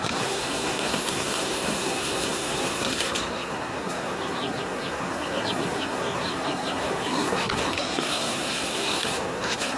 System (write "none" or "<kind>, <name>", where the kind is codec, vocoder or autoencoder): codec, SNAC